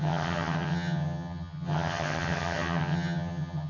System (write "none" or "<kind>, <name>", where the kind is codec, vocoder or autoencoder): vocoder, HiFi-GAN